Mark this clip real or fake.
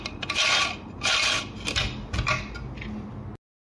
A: real